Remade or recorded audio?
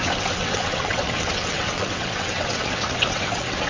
remade